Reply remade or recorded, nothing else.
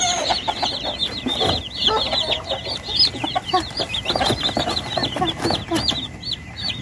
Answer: recorded